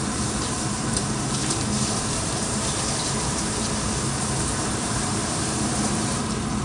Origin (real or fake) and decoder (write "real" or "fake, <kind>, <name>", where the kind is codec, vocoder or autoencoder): fake, vocoder, BigVGAN v2